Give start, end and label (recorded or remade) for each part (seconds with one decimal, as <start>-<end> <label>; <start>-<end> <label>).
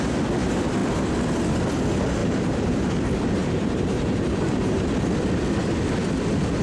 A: 0.0-2.2 recorded; 2.2-2.9 remade; 2.9-3.4 recorded; 3.4-4.9 remade; 4.9-6.6 recorded